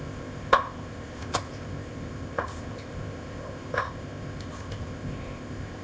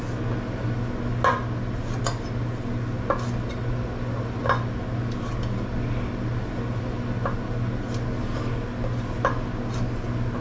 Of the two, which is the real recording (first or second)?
second